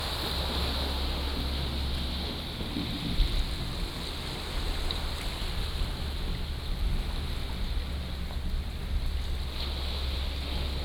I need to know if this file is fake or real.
real